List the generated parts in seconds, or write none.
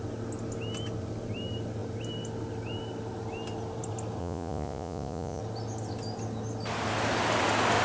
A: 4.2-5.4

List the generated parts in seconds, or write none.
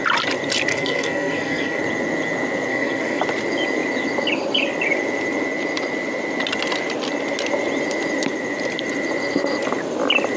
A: 0.7-1.8; 2.7-3.2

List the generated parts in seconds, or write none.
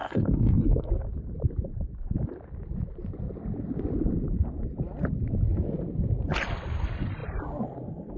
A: 0.0-0.9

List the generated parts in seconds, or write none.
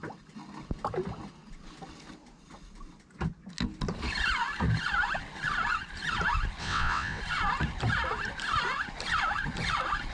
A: 6.6-7.2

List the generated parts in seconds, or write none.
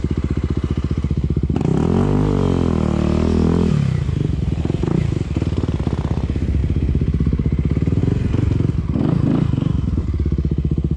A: 6.6-8.0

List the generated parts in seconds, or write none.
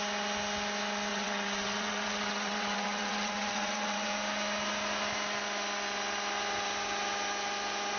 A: 1.1-4.1